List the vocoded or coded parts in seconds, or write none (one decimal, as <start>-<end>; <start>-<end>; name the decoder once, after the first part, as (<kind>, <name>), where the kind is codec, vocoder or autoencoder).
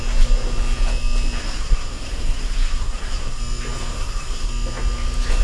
1.4-3.4 (codec, SNAC); 3.9-4.5